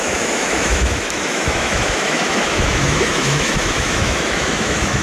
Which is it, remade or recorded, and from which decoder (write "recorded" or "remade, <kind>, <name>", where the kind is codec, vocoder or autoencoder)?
remade, autoencoder, DAC-VAE